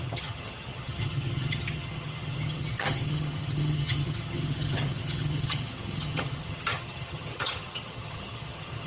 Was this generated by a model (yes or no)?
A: yes